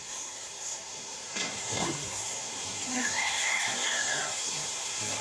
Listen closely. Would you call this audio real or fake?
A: fake